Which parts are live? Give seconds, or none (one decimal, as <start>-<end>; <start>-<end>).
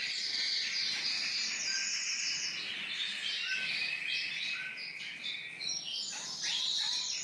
0.0-7.2